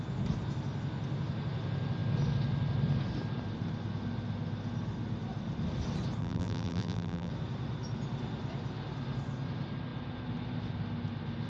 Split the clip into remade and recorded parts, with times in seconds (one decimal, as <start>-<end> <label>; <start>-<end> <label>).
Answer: 0.0-6.2 recorded; 6.2-7.3 remade; 7.3-11.5 recorded